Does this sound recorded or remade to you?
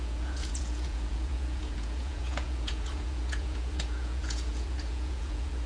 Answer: remade